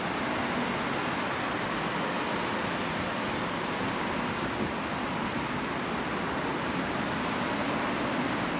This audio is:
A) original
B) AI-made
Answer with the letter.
A